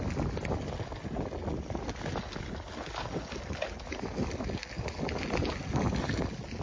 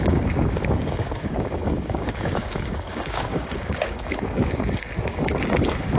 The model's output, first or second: second